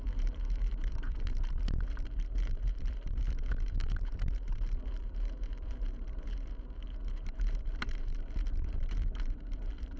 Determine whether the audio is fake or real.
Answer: fake